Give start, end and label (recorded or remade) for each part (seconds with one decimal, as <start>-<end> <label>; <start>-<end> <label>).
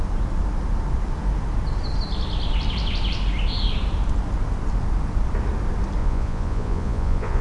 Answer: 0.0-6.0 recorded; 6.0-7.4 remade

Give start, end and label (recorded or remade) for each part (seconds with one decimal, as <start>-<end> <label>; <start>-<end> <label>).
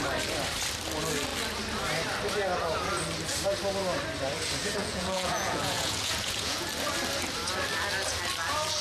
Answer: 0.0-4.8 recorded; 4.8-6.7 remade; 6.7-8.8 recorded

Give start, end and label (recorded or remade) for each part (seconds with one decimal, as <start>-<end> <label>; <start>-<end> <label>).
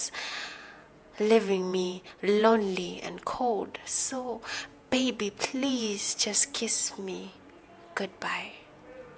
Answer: 0.0-7.6 remade; 7.6-8.4 recorded; 8.4-9.2 remade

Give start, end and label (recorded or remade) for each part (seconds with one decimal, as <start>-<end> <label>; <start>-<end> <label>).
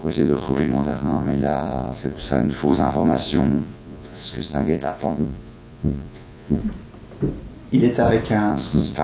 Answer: 0.0-6.6 remade; 6.6-8.5 recorded; 8.5-9.0 remade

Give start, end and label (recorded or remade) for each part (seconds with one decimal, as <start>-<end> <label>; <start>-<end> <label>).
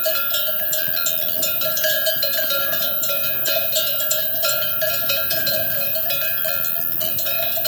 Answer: 0.0-0.8 remade; 0.8-1.4 recorded; 1.4-6.4 remade; 6.4-7.1 recorded; 7.1-7.7 remade